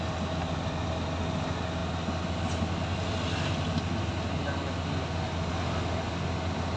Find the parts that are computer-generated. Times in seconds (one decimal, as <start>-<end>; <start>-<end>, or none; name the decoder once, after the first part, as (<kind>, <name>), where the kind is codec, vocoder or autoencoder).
none

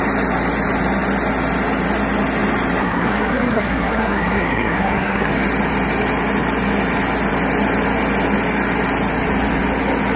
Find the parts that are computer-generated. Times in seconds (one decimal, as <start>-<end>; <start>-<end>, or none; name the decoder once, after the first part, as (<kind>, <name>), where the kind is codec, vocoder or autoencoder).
2.8-5.3 (codec, SNAC)

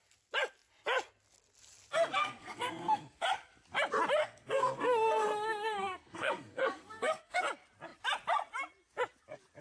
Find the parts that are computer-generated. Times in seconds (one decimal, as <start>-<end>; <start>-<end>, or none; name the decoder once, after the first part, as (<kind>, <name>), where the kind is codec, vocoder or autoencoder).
2.2-3.2 (codec, SNAC); 4.2-7.4

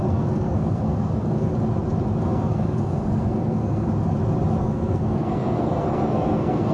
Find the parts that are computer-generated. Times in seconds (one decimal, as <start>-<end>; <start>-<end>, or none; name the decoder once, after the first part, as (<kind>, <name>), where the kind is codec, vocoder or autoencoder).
0.0-1.5 (codec, SNAC); 2.2-3.9; 4.6-6.7